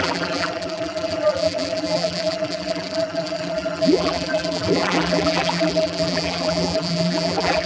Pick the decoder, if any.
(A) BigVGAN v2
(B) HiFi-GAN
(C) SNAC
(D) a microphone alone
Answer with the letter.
A